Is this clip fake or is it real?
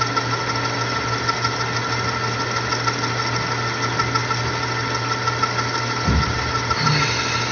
real